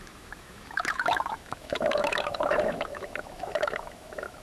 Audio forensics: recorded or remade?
remade